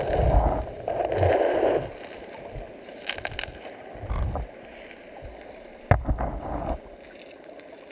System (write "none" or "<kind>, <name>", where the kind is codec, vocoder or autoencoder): none